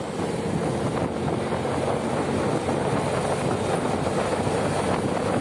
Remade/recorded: recorded